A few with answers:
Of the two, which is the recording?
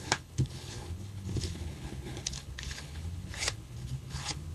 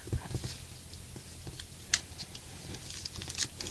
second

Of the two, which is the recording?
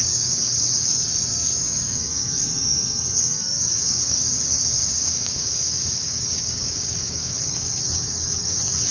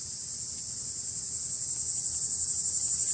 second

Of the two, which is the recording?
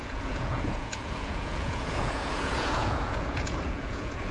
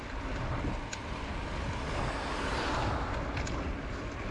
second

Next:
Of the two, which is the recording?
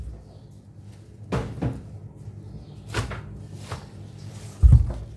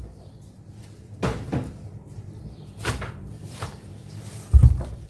first